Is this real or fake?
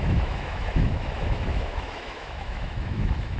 fake